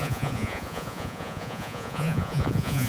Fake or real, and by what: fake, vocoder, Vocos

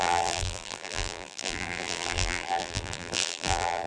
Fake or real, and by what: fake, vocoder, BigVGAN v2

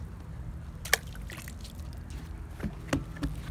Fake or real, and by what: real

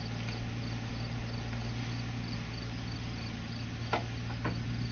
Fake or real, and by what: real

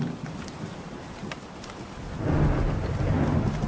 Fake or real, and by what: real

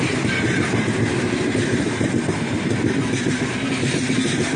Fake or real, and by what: real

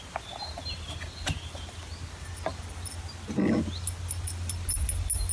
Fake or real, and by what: real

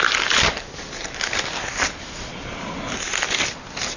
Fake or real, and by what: real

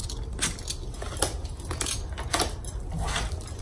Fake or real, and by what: real